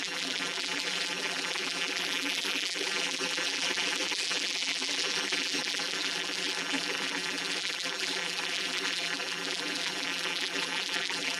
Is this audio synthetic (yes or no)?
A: yes